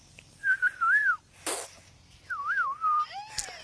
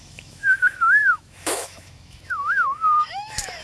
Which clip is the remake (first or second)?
second